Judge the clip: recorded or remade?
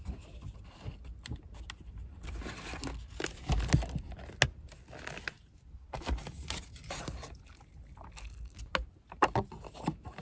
recorded